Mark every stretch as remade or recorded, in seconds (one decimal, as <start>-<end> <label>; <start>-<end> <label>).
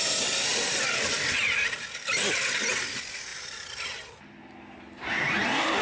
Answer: 0.0-5.8 recorded